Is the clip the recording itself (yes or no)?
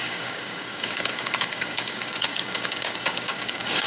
no